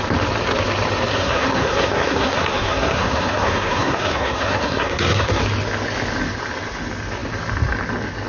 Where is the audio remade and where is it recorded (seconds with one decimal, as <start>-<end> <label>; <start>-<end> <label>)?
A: 0.0-1.1 recorded; 1.1-5.4 remade; 5.4-8.3 recorded